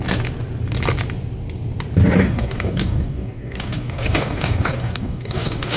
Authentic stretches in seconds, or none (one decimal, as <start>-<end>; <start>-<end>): 0.0-2.2

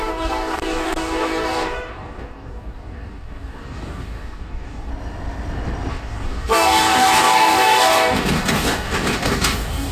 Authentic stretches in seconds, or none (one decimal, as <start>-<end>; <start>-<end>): 4.9-5.9

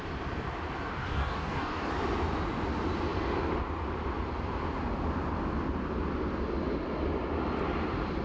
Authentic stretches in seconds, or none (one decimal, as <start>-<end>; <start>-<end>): 0.0-0.9; 1.9-8.2

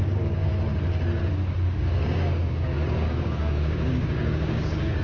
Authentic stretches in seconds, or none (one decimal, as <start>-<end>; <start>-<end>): 0.5-1.3

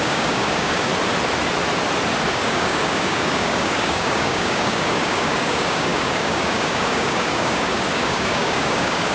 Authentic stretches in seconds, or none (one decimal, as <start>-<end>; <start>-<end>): 0.9-2.3

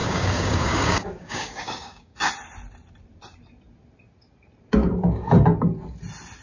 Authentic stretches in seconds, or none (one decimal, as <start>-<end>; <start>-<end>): 2.3-4.8; 5.3-6.4

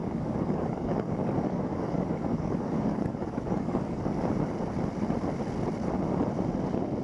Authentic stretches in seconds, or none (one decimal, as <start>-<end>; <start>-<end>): 4.2-7.0